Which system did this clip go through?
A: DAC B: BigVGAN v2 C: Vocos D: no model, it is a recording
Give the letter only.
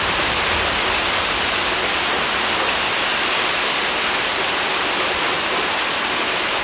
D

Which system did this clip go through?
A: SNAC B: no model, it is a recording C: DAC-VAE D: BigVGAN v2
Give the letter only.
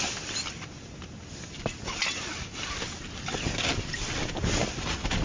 B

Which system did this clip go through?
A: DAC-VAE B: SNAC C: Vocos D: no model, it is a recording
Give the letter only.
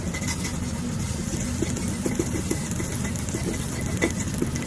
D